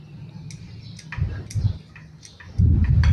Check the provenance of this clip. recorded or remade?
recorded